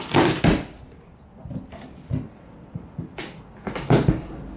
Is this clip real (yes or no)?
yes